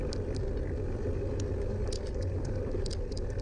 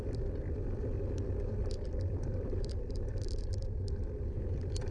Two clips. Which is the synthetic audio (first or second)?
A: second